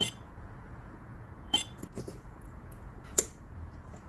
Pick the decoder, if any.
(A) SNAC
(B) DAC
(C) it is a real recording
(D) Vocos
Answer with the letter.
D